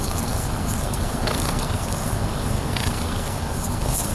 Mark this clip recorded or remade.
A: remade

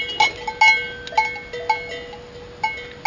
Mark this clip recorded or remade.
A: recorded